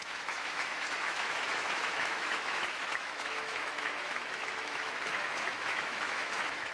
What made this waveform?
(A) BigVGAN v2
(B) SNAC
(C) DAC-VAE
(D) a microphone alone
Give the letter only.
C